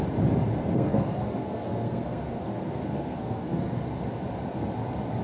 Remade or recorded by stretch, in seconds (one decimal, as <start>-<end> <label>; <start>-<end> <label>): 0.0-0.7 recorded; 0.7-3.8 remade; 3.8-5.2 recorded